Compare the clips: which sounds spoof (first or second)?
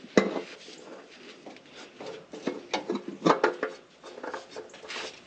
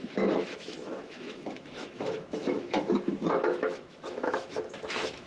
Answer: second